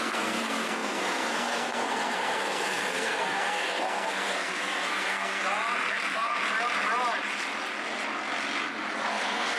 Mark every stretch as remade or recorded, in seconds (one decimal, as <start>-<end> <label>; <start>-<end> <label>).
0.0-5.4 remade; 5.4-5.9 recorded; 5.9-6.4 remade; 6.4-9.1 recorded; 9.1-9.6 remade